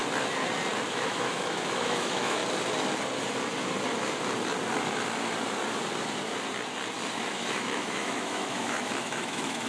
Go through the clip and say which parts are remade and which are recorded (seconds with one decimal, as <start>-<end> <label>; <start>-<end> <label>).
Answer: 0.0-0.9 recorded; 0.9-2.4 remade; 2.4-7.1 recorded; 7.1-9.7 remade

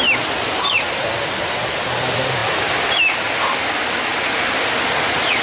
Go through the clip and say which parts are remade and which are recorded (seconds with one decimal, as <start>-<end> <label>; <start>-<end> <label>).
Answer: 0.0-5.4 recorded